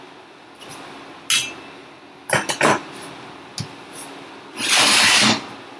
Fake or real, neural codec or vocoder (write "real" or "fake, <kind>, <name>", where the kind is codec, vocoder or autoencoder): real